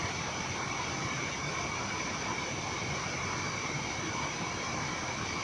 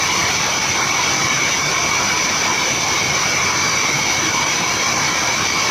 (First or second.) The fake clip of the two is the first